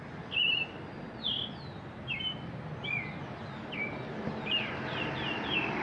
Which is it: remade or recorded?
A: recorded